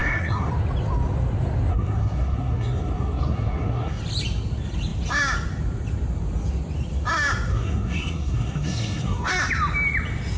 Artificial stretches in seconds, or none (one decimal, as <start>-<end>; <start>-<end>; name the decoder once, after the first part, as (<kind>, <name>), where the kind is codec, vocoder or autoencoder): 0.0-0.5 (codec, SNAC); 1.7-4.0; 7.5-9.3